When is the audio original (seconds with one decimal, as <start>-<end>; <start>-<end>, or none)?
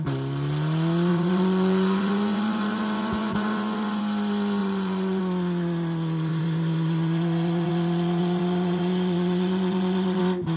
0.0-1.1; 4.0-4.6; 5.2-6.3; 7.7-8.2; 10.2-10.6